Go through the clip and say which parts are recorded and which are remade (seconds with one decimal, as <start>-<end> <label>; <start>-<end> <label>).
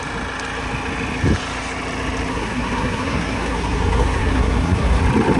0.0-2.3 recorded; 2.3-5.0 remade; 5.0-5.4 recorded